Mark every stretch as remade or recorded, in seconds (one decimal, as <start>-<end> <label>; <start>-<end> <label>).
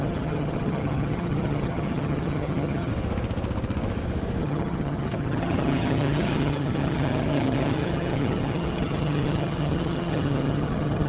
0.0-2.9 remade; 2.9-4.4 recorded; 4.4-11.1 remade